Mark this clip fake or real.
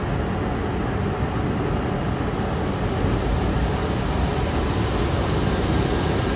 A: real